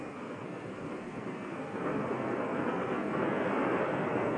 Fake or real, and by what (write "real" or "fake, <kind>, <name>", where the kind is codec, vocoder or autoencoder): fake, codec, SNAC